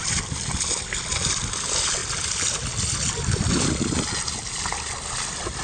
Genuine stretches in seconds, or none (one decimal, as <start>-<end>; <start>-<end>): 0.0-5.6